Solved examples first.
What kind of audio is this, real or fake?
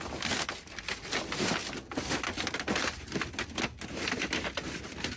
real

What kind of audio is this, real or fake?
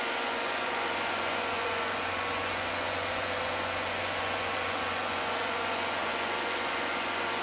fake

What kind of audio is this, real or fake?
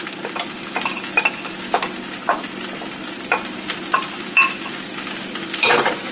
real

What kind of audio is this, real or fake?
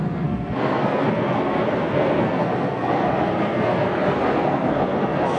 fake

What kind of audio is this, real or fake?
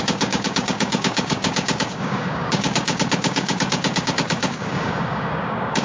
fake